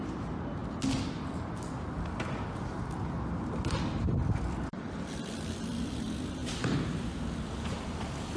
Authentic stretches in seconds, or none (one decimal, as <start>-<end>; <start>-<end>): 0.0-6.4; 7.2-8.4